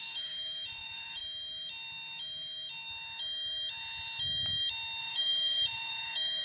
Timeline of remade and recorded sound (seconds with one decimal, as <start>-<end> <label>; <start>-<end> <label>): 0.0-1.2 remade; 1.2-5.0 recorded; 5.0-6.4 remade